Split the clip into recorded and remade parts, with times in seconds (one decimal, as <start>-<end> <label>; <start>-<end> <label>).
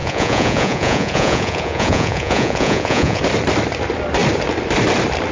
0.0-3.2 remade; 3.2-5.3 recorded